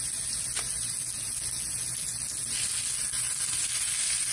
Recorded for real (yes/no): yes